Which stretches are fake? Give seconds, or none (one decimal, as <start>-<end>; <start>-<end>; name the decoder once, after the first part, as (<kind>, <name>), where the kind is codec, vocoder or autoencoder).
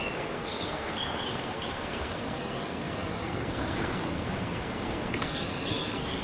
0.0-6.2 (codec, SNAC)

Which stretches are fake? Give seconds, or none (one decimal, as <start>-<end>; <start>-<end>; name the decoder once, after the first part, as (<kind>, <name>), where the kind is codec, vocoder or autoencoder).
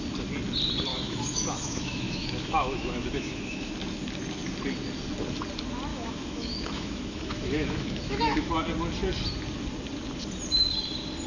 0.9-3.7 (autoencoder, DAC-VAE); 5.9-8.5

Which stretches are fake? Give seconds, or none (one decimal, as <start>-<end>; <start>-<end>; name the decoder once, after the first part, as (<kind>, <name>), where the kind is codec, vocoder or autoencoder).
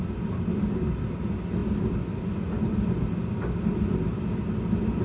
none